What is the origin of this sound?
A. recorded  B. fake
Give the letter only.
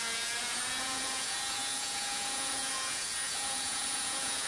B